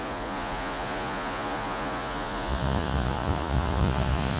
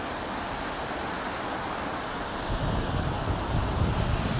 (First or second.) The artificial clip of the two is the first